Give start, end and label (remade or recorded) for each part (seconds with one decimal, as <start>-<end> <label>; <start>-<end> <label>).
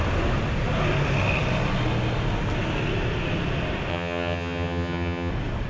0.0-3.9 recorded; 3.9-5.3 remade; 5.3-5.7 recorded